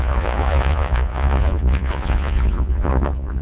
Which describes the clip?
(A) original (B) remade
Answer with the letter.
B